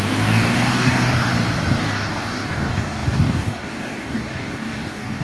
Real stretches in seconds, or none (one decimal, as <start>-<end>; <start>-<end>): 1.3-1.8